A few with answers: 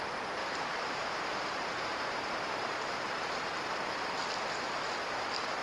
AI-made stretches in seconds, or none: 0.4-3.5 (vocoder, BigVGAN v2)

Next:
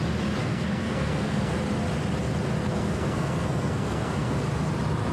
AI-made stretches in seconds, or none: 0.4-1.5 (codec, SNAC); 2.6-4.4

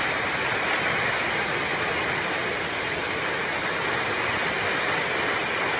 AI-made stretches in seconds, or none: none

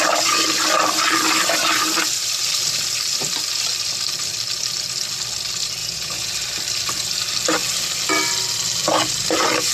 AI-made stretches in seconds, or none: 5.8-6.3 (vocoder, Vocos)

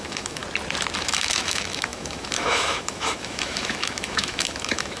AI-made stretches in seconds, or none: 0.0-0.4 (autoencoder, DAC-VAE); 1.0-5.0

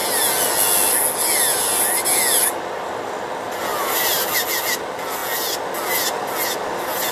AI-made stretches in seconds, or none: 3.7-4.3 (vocoder, BigVGAN v2)

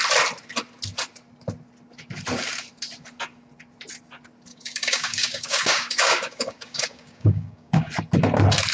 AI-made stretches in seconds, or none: 4.5-7.9 (codec, DAC)